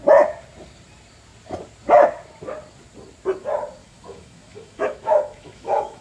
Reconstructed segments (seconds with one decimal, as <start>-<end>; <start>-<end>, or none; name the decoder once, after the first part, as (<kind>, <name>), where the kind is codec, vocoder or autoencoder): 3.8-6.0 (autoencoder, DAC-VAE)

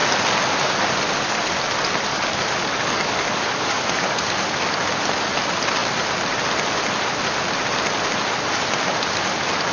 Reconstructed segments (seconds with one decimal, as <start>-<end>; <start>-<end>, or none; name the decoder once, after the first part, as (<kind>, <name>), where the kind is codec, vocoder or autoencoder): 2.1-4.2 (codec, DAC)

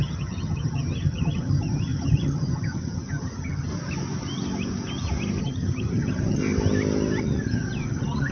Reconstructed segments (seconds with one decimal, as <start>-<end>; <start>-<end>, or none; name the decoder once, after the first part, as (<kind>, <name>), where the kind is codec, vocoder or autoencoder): 0.0-3.7 (vocoder, HiFi-GAN); 5.4-6.4; 7.2-8.3

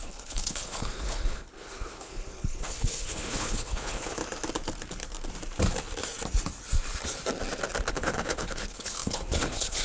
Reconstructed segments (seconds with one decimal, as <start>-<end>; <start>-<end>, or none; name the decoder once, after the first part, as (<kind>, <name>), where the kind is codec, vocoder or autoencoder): 0.0-4.2 (codec, HILCodec); 7.9-9.8

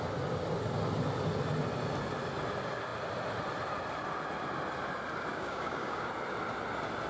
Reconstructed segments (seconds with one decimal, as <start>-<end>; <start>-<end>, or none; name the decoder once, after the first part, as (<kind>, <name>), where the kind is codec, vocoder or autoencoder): 5.3-6.1 (codec, DAC)

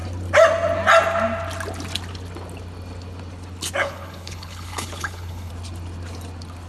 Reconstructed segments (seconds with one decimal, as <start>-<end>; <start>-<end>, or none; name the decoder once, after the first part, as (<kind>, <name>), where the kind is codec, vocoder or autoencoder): 3.8-5.5 (codec, HILCodec)